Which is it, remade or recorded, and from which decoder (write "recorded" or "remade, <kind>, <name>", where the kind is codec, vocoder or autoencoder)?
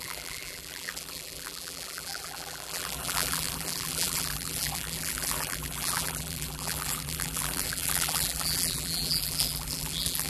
remade, vocoder, BigVGAN v2